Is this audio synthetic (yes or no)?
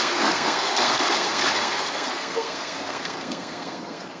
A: yes